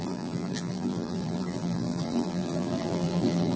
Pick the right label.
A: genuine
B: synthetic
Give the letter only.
B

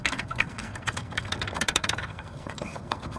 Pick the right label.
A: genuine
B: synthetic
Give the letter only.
B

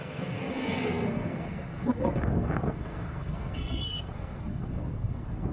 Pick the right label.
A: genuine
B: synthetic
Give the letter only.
B